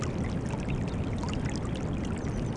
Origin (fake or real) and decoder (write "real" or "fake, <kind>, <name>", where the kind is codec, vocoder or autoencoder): real